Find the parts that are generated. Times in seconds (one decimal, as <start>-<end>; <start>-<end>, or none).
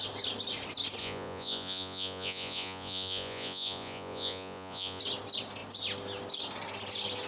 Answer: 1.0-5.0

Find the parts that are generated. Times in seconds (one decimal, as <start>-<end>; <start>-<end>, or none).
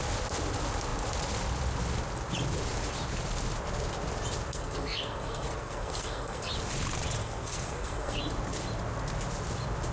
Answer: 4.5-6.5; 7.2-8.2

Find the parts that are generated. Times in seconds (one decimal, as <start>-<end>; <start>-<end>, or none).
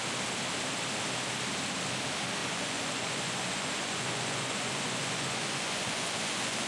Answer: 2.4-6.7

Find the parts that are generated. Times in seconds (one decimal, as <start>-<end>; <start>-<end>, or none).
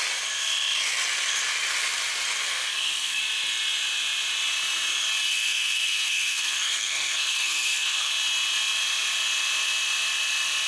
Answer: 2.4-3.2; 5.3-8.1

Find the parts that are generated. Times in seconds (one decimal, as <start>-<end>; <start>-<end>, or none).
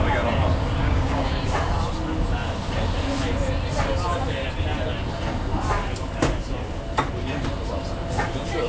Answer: 0.8-1.4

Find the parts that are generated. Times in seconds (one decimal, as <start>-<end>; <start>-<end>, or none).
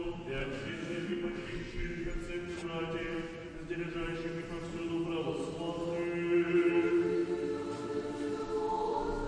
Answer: 0.4-2.0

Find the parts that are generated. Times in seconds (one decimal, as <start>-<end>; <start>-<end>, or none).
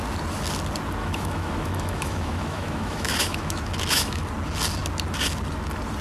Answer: 1.0-4.2